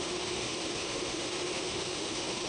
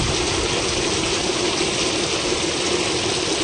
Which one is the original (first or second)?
second